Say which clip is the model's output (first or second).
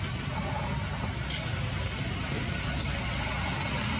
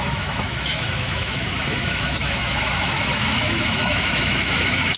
second